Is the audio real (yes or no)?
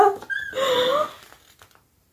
yes